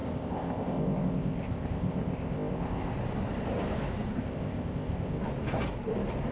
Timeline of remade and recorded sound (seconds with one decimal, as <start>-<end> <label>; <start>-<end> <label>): 0.0-2.9 remade; 2.9-4.2 recorded; 4.2-5.2 remade; 5.2-6.3 recorded